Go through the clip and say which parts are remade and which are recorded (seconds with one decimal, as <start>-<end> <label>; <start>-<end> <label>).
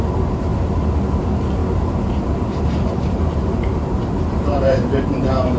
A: 0.0-1.6 recorded; 1.6-5.0 remade; 5.0-5.6 recorded